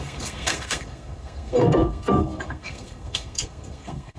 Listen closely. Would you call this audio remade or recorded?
remade